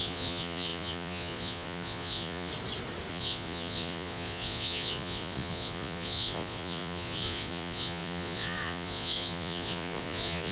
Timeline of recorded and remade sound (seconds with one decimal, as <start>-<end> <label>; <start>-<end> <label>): 0.0-2.5 remade; 2.5-3.1 recorded; 3.1-10.5 remade